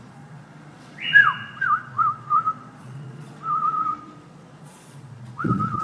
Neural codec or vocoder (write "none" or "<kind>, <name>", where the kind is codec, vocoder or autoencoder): vocoder, Vocos